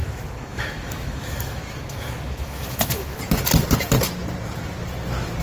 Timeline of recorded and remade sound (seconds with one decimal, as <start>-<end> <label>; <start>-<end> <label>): 0.0-3.2 remade; 3.2-5.4 recorded